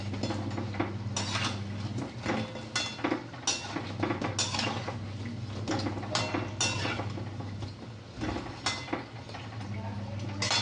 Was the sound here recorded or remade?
recorded